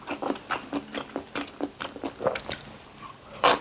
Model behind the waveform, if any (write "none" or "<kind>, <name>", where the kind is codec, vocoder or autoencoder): none